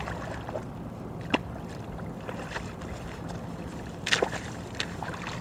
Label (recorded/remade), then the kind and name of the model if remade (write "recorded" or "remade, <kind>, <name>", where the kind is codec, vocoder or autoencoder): recorded